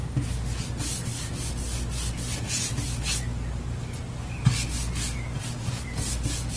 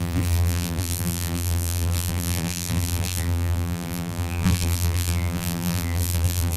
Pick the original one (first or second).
first